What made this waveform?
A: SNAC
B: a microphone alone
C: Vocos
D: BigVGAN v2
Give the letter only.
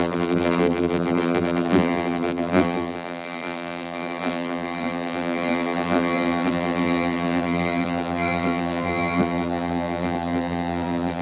D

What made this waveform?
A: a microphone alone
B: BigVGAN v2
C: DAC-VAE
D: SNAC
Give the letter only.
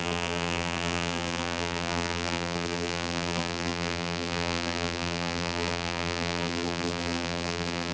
B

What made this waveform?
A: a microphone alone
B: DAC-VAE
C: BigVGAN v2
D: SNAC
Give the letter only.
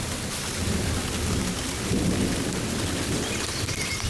A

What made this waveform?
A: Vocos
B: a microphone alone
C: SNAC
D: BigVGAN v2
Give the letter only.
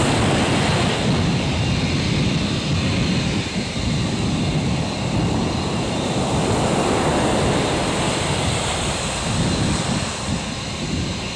B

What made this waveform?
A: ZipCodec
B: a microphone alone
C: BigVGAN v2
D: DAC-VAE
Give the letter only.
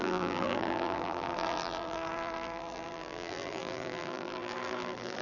C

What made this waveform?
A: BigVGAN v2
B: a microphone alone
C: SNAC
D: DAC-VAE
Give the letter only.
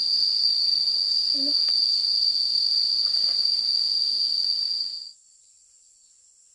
B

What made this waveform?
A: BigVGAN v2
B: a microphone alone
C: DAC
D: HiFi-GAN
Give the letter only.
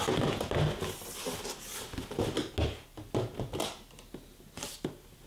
B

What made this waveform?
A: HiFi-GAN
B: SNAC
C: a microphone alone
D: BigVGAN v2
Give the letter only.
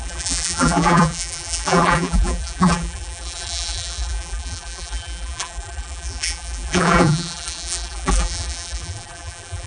D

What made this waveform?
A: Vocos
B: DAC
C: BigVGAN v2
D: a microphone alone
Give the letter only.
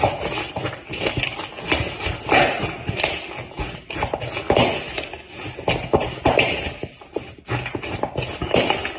D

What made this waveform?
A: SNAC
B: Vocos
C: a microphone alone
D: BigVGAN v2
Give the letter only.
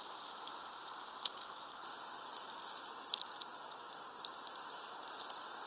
C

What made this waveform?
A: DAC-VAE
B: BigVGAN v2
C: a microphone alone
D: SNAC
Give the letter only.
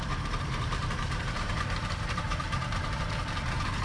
B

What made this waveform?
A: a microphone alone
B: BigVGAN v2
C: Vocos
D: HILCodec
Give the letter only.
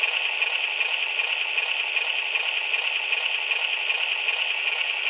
A